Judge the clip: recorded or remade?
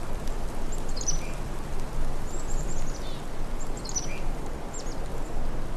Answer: recorded